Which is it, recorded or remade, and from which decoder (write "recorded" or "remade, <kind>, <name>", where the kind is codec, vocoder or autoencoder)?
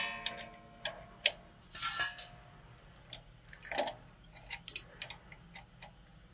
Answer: recorded